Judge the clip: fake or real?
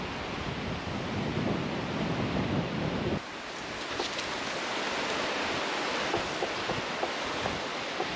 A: real